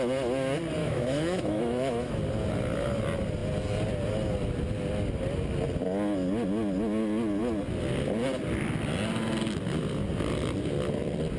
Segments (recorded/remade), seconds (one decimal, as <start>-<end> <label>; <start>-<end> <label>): 0.0-0.8 recorded; 0.8-2.1 remade; 2.1-11.4 recorded